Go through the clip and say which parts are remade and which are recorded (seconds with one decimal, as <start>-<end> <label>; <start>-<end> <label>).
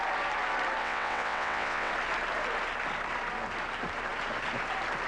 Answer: 0.0-0.8 recorded; 0.8-1.9 remade; 1.9-5.1 recorded